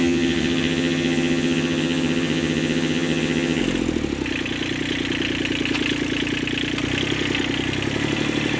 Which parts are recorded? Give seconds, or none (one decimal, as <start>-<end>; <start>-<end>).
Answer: 3.6-8.6